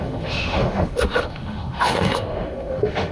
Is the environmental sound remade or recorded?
remade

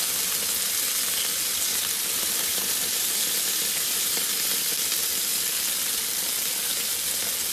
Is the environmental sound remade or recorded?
recorded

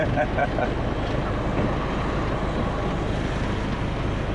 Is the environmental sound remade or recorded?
recorded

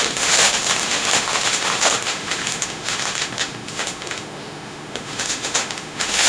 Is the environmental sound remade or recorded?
remade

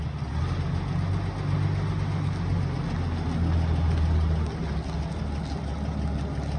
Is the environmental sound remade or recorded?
recorded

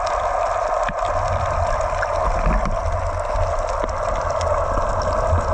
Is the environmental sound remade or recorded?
recorded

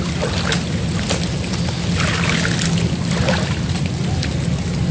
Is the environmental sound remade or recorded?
recorded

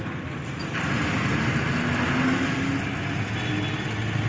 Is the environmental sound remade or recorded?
recorded